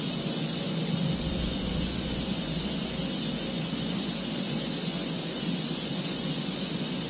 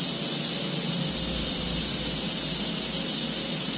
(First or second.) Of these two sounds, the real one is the second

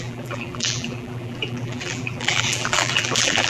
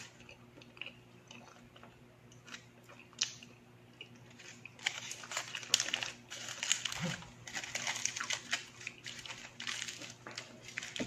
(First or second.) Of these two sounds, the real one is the second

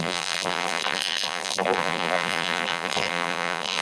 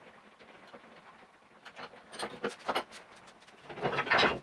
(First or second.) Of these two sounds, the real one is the second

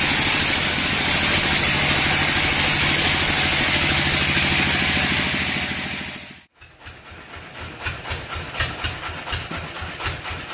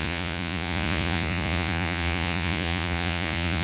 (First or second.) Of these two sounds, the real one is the first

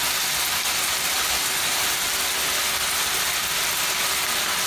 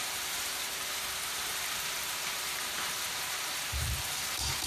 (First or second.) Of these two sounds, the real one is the first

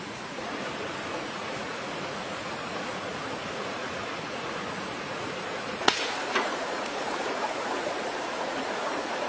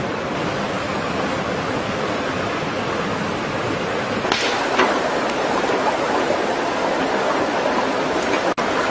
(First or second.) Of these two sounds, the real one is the second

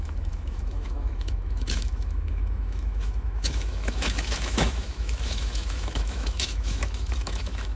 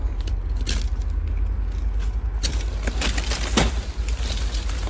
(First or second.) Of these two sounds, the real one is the second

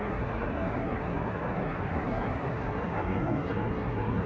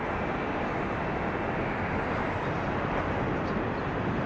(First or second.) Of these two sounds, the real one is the second